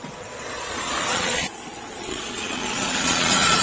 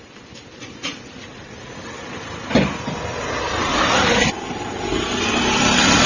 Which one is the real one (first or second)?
second